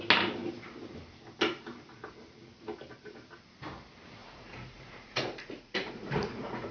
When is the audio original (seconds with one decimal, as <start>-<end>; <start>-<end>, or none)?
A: 0.0-4.2